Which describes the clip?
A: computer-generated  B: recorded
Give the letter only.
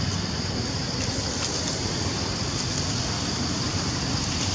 B